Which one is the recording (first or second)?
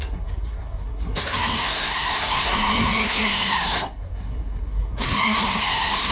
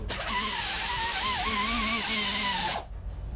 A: second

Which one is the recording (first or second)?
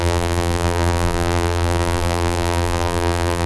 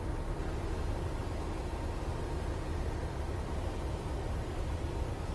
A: second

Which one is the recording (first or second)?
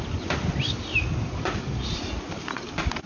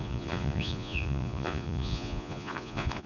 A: first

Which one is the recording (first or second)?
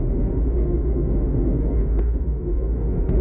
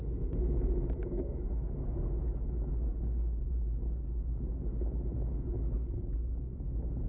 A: second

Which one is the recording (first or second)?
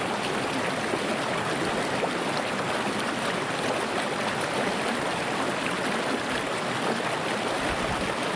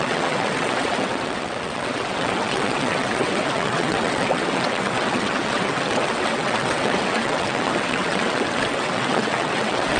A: first